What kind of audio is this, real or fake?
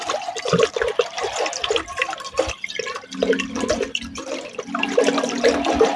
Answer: real